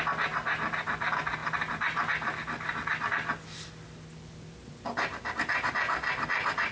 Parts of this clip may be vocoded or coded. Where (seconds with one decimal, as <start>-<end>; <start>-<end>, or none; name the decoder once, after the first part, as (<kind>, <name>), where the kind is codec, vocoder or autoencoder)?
none